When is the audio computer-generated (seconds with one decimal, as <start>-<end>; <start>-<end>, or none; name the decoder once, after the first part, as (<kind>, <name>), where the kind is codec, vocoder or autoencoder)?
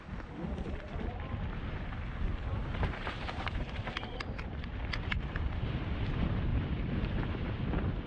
2.5-6.0 (vocoder, BigVGAN v2); 6.5-7.5